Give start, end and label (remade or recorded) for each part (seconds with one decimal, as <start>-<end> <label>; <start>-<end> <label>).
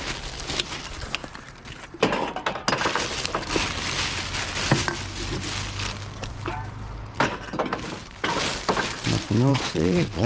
0.0-9.5 recorded; 9.5-10.3 remade